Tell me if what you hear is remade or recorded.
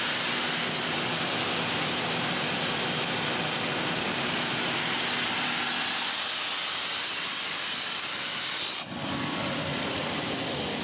recorded